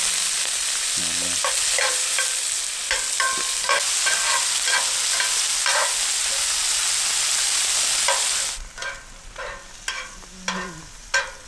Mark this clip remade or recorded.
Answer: recorded